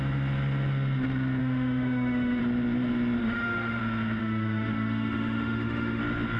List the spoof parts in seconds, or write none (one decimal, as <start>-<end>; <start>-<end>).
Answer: 1.4-2.4; 3.2-3.8; 4.2-6.0